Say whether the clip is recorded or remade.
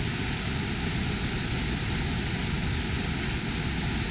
recorded